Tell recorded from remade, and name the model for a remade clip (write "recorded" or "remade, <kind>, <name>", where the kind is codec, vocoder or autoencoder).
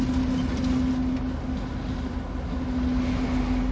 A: recorded